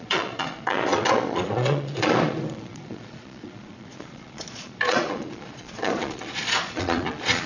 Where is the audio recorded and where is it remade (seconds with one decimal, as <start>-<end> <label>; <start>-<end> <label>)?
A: 0.0-7.5 remade